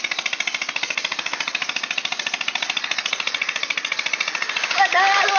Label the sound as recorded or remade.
recorded